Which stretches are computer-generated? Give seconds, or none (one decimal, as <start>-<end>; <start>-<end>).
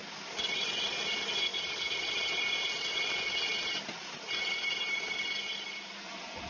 none